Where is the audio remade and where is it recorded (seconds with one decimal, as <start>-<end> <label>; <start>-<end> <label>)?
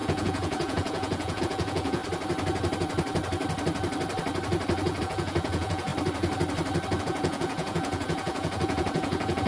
0.0-2.0 remade; 2.0-5.0 recorded; 5.0-5.9 remade; 5.9-7.0 recorded; 7.0-9.5 remade